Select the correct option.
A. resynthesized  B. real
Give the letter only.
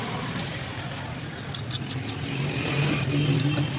B